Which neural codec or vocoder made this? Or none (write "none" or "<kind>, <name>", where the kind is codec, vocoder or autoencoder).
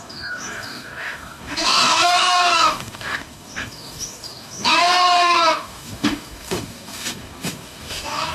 codec, DAC